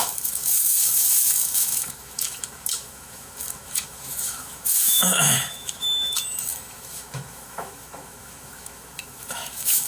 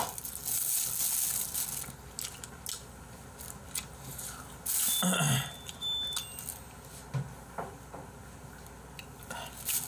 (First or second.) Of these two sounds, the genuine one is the second